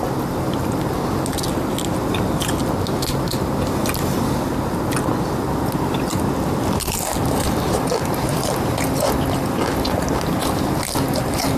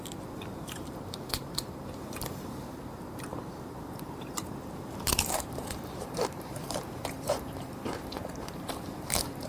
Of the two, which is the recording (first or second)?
first